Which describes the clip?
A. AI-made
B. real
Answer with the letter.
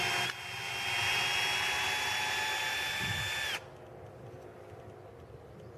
B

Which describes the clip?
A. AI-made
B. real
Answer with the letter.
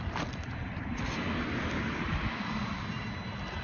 B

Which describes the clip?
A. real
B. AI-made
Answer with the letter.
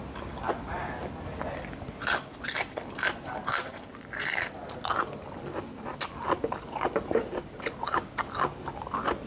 A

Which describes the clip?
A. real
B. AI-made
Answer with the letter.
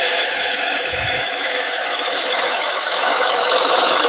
B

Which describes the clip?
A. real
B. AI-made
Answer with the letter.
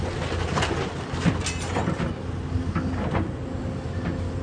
A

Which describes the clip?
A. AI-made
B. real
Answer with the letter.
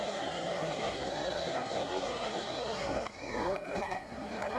A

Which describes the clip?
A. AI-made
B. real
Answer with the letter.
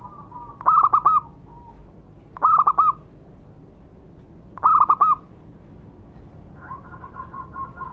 B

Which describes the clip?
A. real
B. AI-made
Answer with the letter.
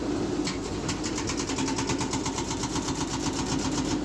A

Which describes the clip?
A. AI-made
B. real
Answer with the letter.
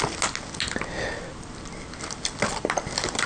B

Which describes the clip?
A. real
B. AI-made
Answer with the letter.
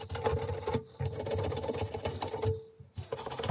A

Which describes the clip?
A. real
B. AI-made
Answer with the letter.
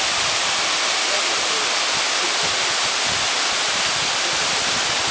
A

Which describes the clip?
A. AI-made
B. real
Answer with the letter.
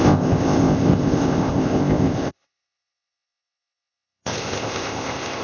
A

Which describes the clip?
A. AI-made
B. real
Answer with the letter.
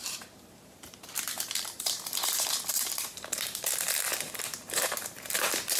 A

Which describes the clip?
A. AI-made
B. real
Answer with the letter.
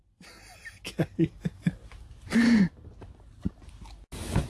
B